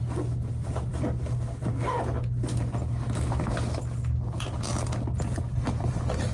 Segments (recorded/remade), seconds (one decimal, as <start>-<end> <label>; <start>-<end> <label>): 0.0-6.3 recorded